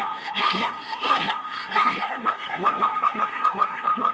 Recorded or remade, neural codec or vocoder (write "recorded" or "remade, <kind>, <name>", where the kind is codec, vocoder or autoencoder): remade, codec, SNAC